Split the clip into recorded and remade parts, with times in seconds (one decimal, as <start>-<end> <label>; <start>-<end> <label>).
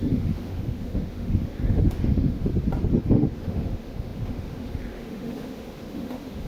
0.0-2.5 remade; 2.5-3.0 recorded; 3.0-6.5 remade